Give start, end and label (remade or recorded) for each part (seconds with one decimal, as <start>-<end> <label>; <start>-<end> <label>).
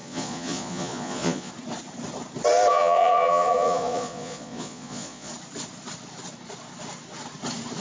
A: 0.0-1.5 remade; 1.5-2.7 recorded; 2.7-5.3 remade; 5.3-7.8 recorded